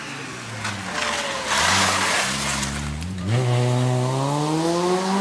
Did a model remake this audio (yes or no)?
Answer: no